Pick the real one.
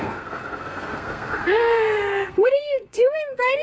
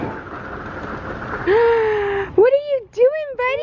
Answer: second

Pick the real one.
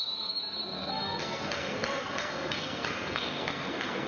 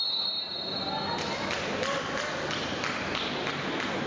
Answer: second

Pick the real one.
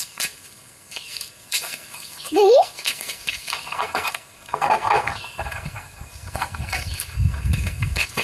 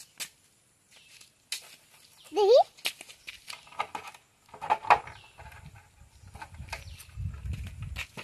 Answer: second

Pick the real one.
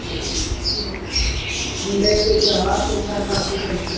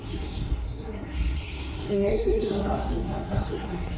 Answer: first